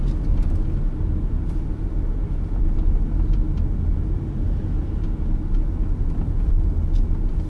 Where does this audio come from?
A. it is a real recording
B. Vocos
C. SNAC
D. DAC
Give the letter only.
A